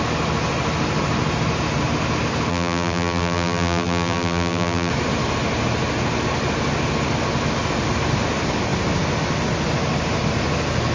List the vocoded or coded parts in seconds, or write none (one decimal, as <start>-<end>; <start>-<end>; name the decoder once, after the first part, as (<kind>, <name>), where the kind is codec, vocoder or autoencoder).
2.5-4.9 (vocoder, BigVGAN v2)